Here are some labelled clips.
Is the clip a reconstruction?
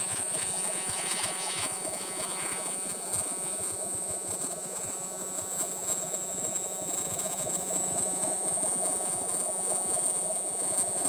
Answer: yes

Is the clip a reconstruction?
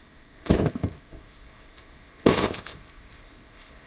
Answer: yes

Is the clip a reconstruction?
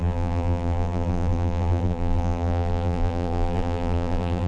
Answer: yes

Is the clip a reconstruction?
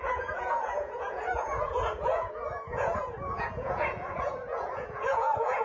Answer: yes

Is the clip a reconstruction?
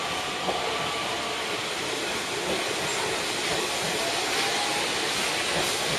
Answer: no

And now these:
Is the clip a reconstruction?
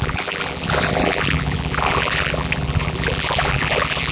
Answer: yes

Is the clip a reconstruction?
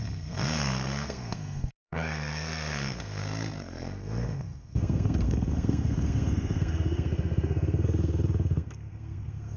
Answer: yes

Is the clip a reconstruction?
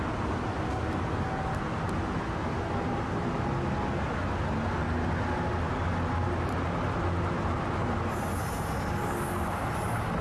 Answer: no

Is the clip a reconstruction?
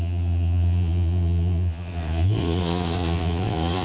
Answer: yes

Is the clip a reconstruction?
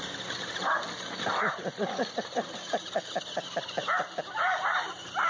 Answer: no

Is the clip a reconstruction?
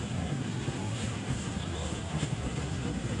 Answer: yes